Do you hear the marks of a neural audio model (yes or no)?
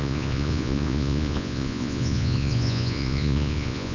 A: yes